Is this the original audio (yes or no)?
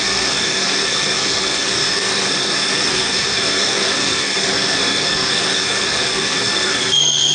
no